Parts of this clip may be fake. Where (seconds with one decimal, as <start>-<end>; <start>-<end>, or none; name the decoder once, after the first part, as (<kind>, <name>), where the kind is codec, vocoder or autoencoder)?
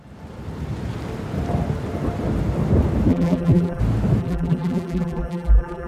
3.1-3.8 (vocoder, BigVGAN v2); 4.2-5.9